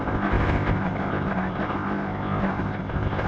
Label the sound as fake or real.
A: fake